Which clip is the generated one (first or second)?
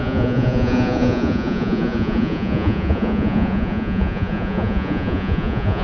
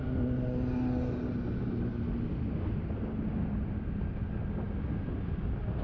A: first